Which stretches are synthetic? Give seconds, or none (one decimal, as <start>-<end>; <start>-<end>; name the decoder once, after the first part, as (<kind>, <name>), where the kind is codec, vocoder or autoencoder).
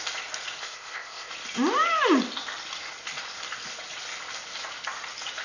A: 0.6-1.3 (codec, ZipCodec)